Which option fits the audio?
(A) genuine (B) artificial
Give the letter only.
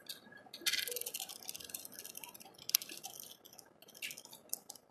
A